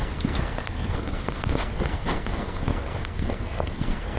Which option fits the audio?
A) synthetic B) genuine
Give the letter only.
A